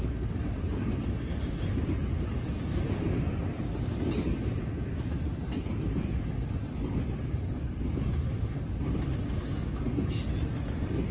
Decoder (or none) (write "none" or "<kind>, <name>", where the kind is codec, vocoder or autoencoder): none